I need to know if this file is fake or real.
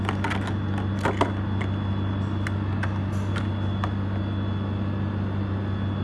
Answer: real